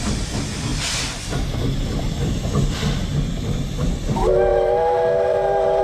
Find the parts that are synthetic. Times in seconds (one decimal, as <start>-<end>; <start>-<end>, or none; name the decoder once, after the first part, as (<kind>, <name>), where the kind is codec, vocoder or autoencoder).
4.5-5.8 (vocoder, BigVGAN v2)